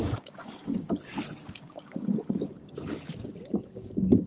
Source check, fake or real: fake